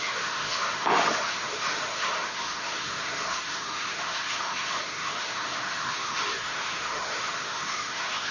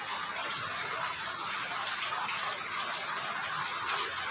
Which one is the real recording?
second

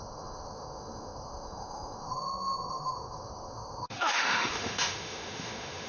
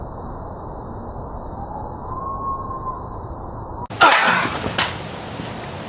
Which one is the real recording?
second